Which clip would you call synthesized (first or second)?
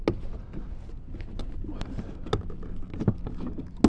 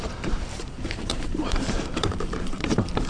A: second